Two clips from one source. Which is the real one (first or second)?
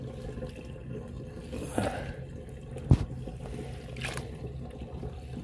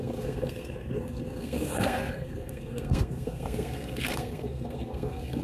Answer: first